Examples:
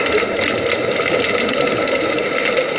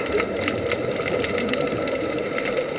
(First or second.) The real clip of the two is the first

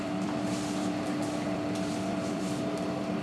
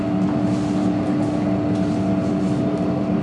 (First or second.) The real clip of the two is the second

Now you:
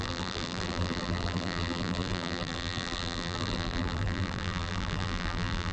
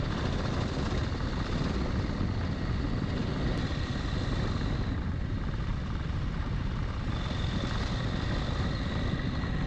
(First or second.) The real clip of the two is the second